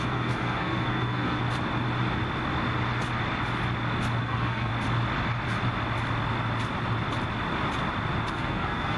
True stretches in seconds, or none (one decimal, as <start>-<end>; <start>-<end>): 1.4-4.2; 4.7-8.3